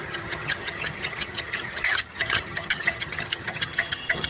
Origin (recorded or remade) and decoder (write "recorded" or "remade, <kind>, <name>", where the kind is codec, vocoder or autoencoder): remade, vocoder, HiFi-GAN